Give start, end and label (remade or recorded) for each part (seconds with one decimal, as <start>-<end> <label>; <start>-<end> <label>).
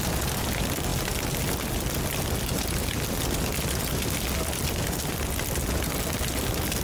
0.0-6.8 recorded